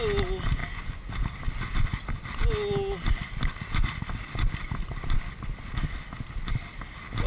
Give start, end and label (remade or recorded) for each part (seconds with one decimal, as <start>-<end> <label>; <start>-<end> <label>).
0.0-7.3 recorded